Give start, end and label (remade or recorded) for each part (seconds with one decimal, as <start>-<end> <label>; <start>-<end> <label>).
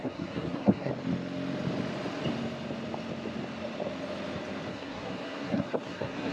0.0-0.9 remade; 0.9-4.7 recorded; 4.7-6.3 remade